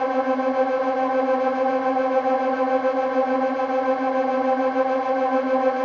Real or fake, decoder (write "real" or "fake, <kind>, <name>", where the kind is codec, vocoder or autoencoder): real